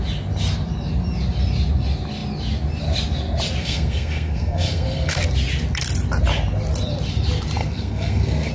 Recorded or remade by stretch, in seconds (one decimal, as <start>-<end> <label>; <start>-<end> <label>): 0.0-3.6 recorded; 3.6-5.2 remade; 5.2-7.6 recorded; 7.6-8.5 remade

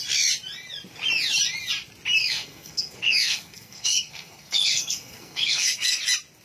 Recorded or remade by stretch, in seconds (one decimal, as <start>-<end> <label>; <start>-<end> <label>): 0.0-2.2 recorded; 2.2-6.0 remade; 6.0-6.4 recorded

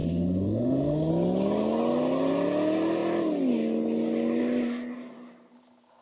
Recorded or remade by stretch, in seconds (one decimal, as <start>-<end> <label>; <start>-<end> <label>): 0.0-1.1 remade; 1.1-6.0 recorded

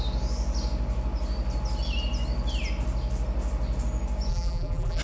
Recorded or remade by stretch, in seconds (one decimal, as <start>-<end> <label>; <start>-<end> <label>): 0.0-4.3 recorded; 4.3-5.0 remade

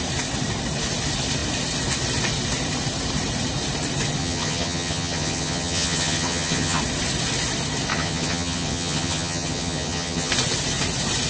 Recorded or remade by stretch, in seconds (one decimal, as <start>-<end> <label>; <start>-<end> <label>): 0.0-4.2 recorded; 4.2-6.8 remade; 6.8-7.9 recorded; 7.9-10.3 remade; 10.3-11.3 recorded

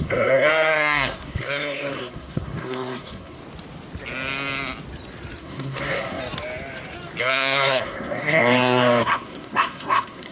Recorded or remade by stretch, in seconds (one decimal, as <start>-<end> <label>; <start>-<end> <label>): 0.0-3.4 remade; 3.4-5.4 recorded; 5.4-6.2 remade; 6.2-7.2 recorded; 7.2-10.3 remade